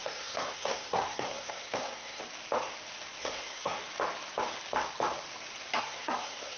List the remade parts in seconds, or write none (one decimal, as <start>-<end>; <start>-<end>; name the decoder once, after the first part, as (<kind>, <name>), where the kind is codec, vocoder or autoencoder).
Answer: 0.0-2.2 (codec, SNAC); 3.2-3.8; 5.8-6.6